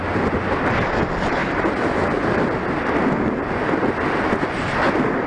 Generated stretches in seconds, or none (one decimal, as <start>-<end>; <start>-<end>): none